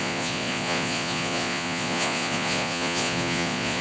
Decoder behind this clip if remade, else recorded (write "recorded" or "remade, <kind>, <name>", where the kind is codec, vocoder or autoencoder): remade, vocoder, Vocos